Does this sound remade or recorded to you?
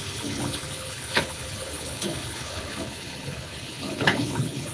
remade